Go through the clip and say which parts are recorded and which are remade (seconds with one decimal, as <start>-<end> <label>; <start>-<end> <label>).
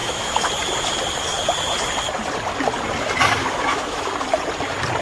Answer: 0.0-0.5 remade; 0.5-3.4 recorded; 3.4-4.1 remade; 4.1-5.0 recorded